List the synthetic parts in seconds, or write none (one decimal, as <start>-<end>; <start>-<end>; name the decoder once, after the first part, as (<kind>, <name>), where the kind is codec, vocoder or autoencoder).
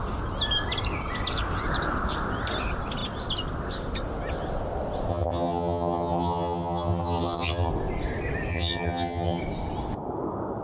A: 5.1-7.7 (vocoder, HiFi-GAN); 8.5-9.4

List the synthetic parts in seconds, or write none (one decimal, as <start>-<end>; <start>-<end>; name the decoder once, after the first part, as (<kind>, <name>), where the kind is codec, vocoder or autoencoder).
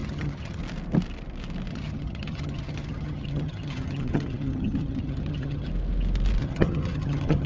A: 0.0-0.6 (vocoder, HiFi-GAN); 1.7-5.7; 6.4-7.5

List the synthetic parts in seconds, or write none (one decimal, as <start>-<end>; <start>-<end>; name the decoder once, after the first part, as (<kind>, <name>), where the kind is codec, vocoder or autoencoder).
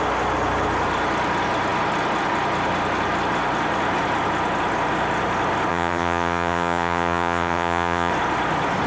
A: 5.7-8.1 (vocoder, HiFi-GAN)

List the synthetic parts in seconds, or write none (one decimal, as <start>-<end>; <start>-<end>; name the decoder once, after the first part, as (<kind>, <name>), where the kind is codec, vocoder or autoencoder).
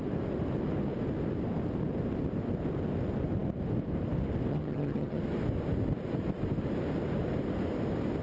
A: 4.5-5.2 (vocoder, HiFi-GAN)